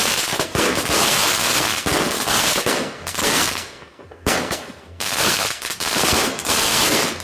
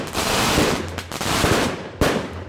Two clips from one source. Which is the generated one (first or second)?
first